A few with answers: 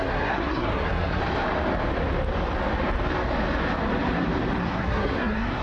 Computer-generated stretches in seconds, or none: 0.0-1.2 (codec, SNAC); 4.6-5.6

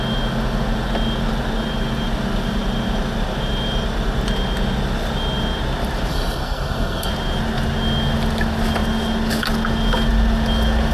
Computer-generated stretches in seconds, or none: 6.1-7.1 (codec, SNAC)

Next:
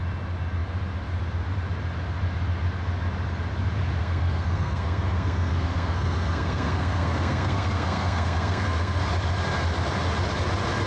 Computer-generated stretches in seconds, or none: 4.0-9.0 (codec, SNAC)

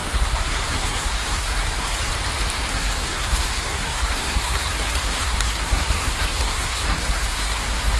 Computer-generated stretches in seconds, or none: 0.0-2.1 (codec, SNAC); 2.7-8.0